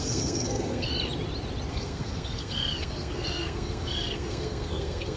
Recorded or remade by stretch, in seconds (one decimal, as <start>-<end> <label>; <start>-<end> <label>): 0.0-0.9 remade; 0.9-1.7 recorded; 1.7-5.2 remade